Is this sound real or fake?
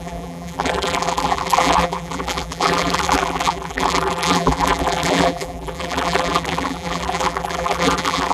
fake